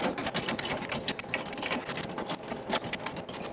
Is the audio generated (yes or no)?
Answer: no